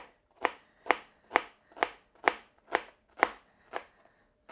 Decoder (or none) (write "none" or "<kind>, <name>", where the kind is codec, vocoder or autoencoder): none